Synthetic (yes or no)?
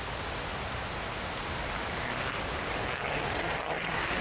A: no